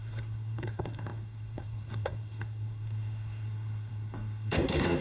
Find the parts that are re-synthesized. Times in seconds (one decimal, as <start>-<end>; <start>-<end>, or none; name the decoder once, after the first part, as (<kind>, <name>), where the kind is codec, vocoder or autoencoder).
0.0-5.0 (codec, SNAC)